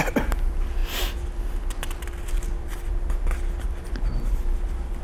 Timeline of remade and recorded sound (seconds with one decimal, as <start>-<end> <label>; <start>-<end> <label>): 0.0-5.0 recorded